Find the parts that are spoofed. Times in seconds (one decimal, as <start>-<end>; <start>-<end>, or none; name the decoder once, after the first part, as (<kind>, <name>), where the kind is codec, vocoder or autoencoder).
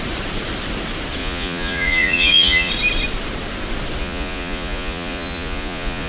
1.2-2.7 (vocoder, Vocos); 4.0-6.1